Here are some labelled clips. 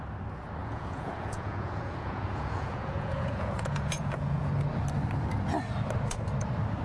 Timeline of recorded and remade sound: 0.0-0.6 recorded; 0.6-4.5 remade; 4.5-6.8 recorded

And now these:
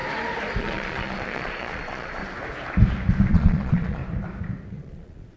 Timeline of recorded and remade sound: 0.0-0.6 recorded; 0.6-2.2 remade; 2.2-3.3 recorded; 3.3-4.0 remade; 4.0-4.7 recorded; 4.7-5.4 remade

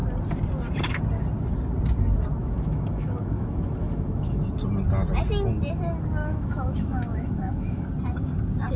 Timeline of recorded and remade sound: 0.0-2.4 recorded; 2.4-4.4 remade; 4.4-6.2 recorded; 6.2-7.9 remade; 7.9-8.8 recorded

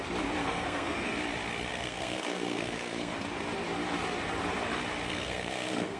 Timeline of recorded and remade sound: 0.0-0.4 recorded; 0.4-1.1 remade; 1.1-1.7 recorded; 1.7-3.1 remade; 3.1-5.1 recorded; 5.1-6.0 remade

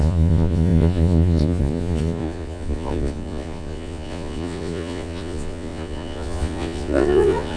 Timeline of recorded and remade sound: 0.0-7.6 remade